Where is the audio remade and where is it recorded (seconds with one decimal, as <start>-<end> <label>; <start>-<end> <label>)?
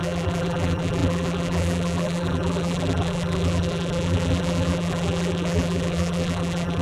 0.0-6.8 remade